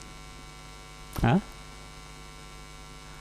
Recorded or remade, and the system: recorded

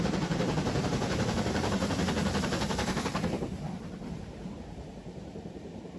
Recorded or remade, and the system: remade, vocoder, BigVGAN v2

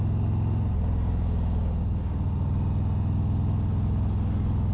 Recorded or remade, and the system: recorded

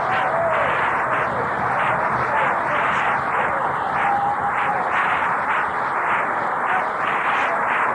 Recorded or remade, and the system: recorded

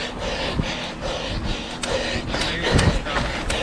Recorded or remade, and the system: recorded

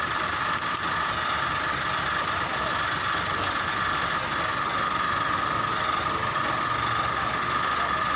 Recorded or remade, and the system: remade, vocoder, BigVGAN v2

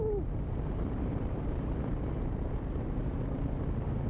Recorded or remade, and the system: remade, vocoder, BigVGAN v2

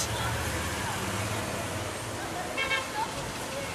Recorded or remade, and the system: recorded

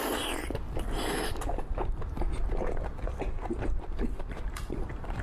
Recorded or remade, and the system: remade, vocoder, BigVGAN v2